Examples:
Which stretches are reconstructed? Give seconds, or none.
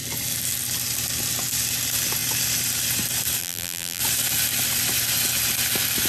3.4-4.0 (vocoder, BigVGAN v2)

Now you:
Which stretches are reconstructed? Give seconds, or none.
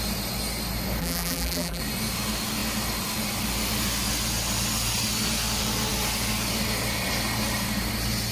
1.0-1.8 (vocoder, BigVGAN v2)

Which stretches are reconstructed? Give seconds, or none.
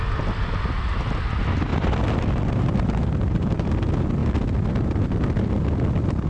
1.7-3.7 (vocoder, BigVGAN v2)